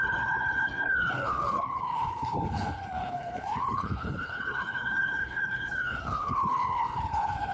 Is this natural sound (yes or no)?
no